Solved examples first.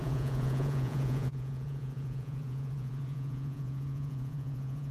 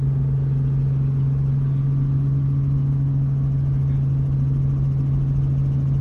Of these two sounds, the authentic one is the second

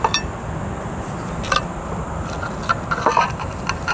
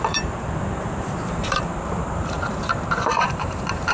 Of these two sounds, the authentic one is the first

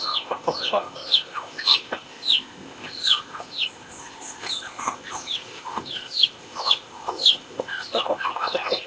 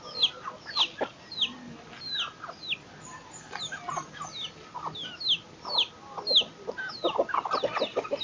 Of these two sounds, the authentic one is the second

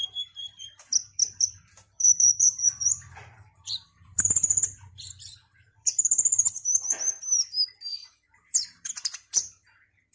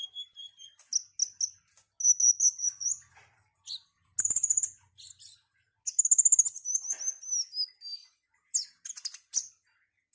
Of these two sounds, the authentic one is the second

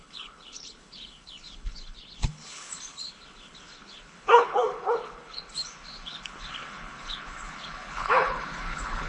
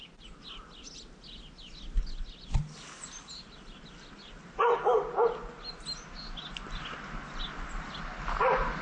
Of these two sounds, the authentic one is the second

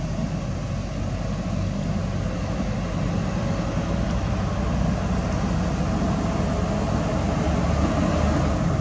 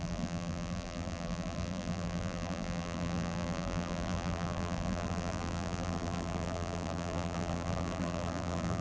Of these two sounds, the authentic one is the first